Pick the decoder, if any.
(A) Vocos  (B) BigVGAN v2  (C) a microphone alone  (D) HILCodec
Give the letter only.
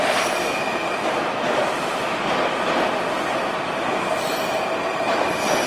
C